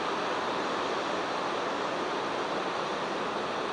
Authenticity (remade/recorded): recorded